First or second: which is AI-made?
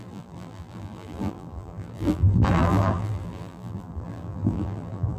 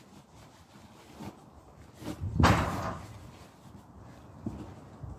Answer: first